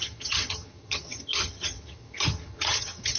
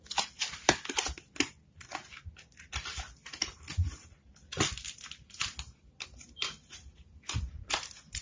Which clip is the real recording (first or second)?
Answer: second